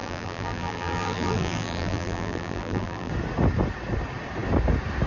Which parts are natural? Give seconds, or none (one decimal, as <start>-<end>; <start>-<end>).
3.1-5.1